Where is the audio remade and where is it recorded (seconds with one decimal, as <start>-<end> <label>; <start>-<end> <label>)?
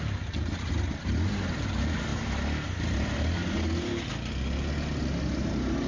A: 0.0-5.9 recorded